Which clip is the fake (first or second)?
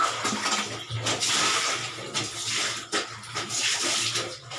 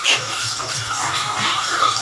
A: second